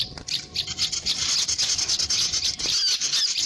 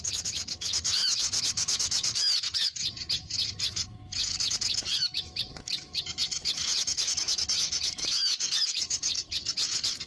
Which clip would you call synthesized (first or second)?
second